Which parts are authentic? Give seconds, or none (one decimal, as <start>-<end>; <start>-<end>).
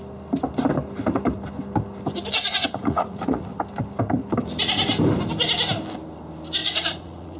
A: 0.0-2.5; 3.6-6.6